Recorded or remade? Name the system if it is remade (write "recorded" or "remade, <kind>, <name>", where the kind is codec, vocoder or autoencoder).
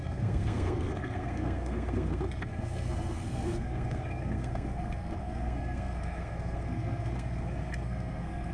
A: remade, codec, SNAC